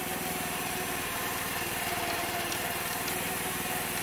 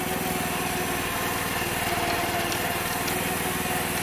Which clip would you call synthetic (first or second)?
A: first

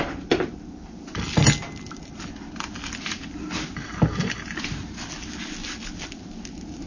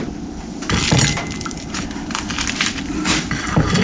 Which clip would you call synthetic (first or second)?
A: second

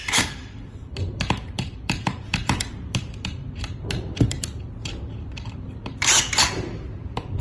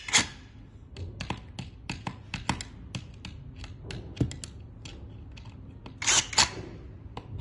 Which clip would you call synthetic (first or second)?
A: first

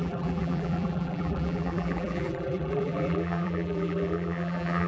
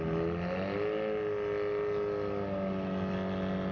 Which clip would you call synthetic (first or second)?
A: first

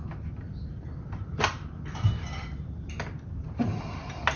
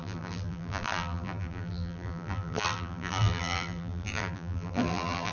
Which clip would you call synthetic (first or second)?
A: second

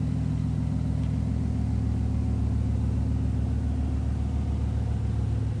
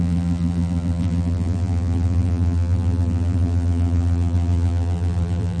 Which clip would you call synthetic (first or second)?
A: second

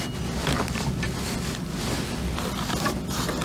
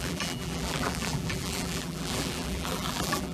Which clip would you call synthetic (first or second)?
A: second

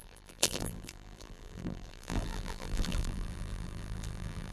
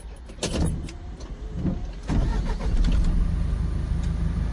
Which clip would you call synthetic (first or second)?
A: first